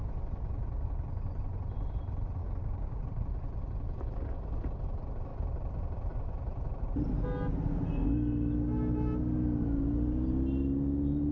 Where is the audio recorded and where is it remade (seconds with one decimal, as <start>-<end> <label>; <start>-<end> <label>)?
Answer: 0.0-2.4 recorded; 2.4-3.0 remade; 3.0-11.3 recorded